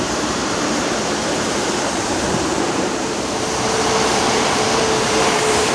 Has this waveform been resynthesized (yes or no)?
yes